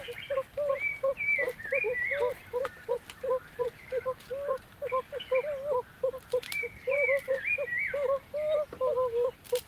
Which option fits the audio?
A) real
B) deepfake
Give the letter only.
A